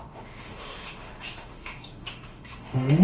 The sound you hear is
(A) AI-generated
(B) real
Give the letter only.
A